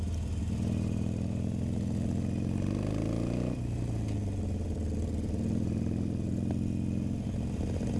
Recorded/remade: recorded